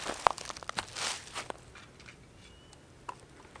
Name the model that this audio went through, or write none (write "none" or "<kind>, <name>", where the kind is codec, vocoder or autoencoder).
none